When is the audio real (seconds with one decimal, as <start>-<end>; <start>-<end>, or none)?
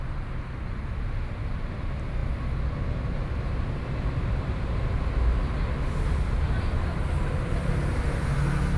0.0-8.8